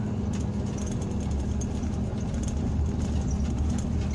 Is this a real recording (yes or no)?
yes